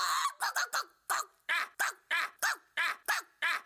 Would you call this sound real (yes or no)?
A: yes